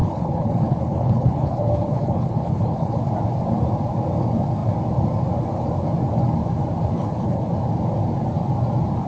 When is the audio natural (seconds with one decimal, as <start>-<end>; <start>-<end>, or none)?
3.0-6.9; 7.4-9.1